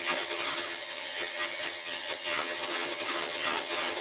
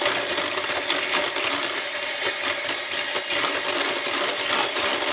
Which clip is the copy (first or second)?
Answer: first